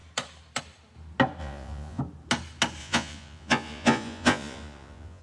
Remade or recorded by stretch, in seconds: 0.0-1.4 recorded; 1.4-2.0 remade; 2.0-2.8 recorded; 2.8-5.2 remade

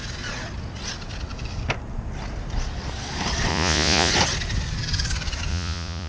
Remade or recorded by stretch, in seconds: 0.0-3.5 recorded; 3.5-4.1 remade; 4.1-5.5 recorded; 5.5-6.1 remade

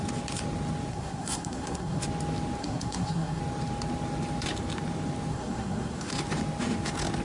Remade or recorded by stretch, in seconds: 0.0-0.9 recorded; 0.9-2.0 remade; 2.0-2.6 recorded; 2.6-3.4 remade; 3.4-5.3 recorded; 5.3-6.1 remade; 6.1-7.2 recorded

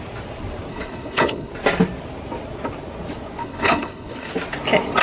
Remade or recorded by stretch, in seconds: 0.0-0.7 recorded; 0.7-1.5 remade; 1.5-3.4 recorded; 3.4-4.3 remade; 4.3-5.0 recorded

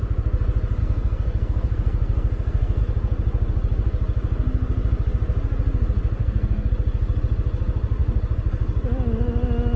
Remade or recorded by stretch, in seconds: 0.0-0.8 recorded; 0.8-2.8 remade; 2.8-6.2 recorded; 6.2-6.7 remade; 6.7-9.8 recorded